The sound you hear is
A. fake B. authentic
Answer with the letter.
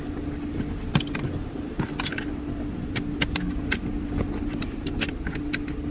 B